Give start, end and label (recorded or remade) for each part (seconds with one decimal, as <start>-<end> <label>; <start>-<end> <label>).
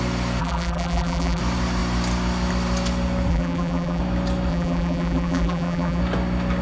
0.0-0.4 recorded; 0.4-1.4 remade; 1.4-3.3 recorded; 3.3-4.0 remade; 4.0-4.5 recorded; 4.5-6.0 remade; 6.0-6.6 recorded